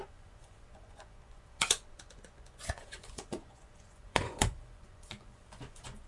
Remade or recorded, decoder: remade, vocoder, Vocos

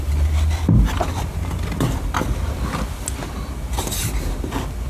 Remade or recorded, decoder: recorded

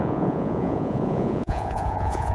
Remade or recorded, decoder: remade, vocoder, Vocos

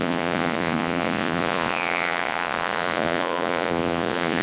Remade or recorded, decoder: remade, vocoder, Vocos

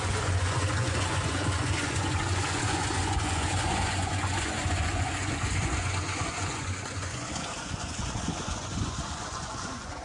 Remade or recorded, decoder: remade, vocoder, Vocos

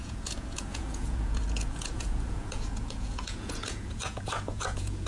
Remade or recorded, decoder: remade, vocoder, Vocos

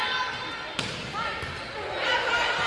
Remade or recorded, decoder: recorded